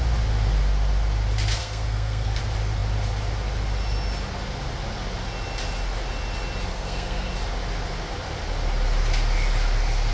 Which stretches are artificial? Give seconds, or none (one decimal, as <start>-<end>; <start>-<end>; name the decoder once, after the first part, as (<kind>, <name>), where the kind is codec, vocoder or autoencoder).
1.6-2.4 (codec, SNAC); 6.7-7.3